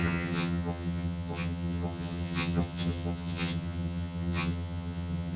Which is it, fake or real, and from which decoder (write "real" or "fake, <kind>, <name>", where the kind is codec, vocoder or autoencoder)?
fake, vocoder, HiFi-GAN